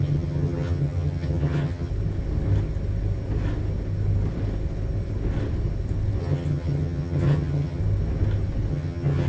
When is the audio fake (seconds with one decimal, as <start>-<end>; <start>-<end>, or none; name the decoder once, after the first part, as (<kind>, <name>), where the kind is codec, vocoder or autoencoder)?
0.0-1.9 (vocoder, HiFi-GAN); 6.2-7.8; 8.7-9.3